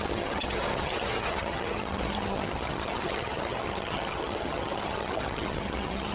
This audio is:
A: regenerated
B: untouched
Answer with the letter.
A